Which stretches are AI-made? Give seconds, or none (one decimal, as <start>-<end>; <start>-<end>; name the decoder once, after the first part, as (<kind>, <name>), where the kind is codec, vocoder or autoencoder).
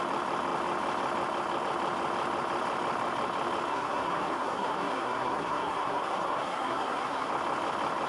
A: 3.7-7.3 (codec, SNAC)